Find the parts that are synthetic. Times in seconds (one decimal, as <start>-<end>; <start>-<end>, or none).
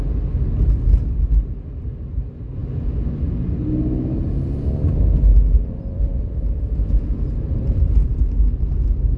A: 5.3-8.2